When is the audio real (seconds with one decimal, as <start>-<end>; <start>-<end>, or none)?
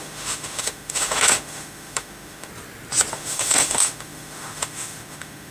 2.5-3.1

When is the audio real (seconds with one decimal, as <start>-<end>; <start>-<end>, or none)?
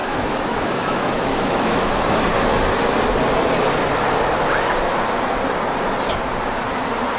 1.8-7.2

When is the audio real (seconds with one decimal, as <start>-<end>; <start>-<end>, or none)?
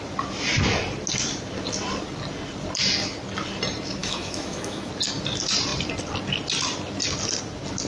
0.0-4.0; 4.9-7.9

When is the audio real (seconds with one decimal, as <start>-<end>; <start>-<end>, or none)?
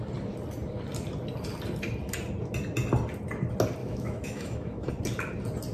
0.0-3.8; 4.9-5.7